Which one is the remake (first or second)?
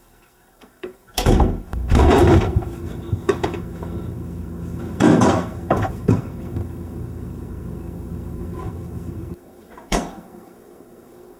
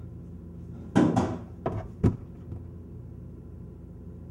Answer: first